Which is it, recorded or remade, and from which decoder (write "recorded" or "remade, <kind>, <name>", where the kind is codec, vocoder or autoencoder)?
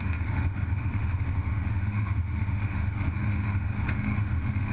remade, autoencoder, DAC-VAE